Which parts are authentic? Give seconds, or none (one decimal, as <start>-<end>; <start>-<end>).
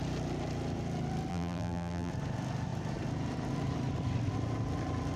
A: 0.0-1.3; 2.1-5.2